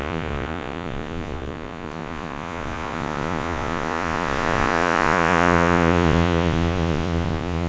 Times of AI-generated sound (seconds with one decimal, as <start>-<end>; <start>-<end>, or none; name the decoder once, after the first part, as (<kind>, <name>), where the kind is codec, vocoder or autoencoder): 0.0-7.7 (vocoder, Vocos)